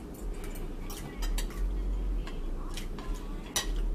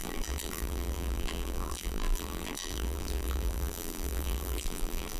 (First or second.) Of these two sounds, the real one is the first